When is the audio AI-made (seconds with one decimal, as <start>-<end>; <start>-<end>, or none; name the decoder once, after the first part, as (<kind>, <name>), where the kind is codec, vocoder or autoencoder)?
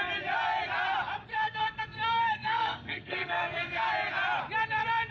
1.3-3.9 (codec, SNAC)